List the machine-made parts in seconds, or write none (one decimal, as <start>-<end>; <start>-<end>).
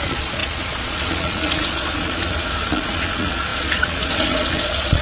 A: 0.0-5.0